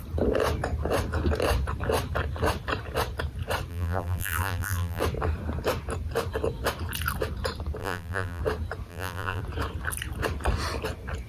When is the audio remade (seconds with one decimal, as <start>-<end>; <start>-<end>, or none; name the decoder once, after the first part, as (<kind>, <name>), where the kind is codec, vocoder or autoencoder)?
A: 3.7-5.0 (vocoder, BigVGAN v2); 7.8-8.4; 8.9-9.4